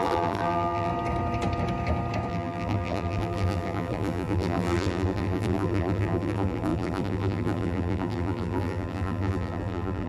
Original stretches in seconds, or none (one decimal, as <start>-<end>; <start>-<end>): 0.9-2.3